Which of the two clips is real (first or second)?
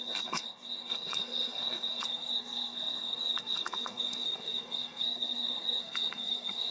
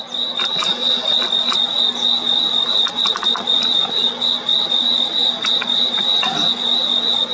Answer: second